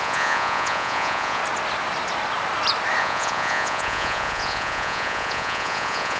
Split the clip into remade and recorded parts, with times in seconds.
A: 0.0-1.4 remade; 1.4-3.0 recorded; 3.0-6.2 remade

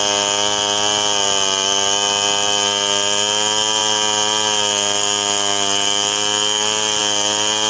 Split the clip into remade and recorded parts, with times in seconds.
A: 0.0-7.7 recorded

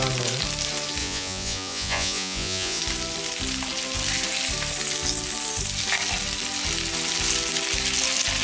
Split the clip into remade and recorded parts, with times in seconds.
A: 0.0-1.0 recorded; 1.0-2.8 remade; 2.8-8.4 recorded

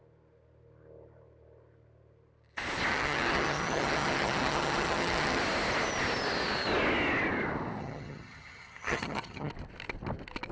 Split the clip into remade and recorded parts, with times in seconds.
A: 0.0-2.9 recorded; 2.9-5.4 remade; 5.4-7.8 recorded; 7.8-9.5 remade; 9.5-10.5 recorded

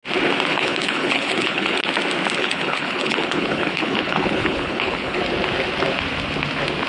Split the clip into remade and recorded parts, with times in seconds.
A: 0.0-0.5 recorded; 0.5-1.9 remade; 1.9-2.4 recorded; 2.4-5.2 remade; 5.2-6.9 recorded